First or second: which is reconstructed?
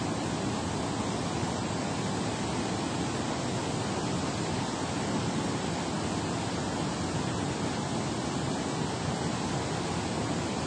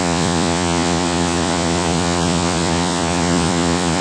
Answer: second